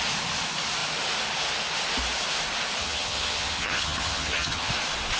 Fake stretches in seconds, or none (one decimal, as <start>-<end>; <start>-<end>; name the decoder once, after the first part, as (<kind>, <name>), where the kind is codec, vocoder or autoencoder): 2.8-4.7 (vocoder, HiFi-GAN)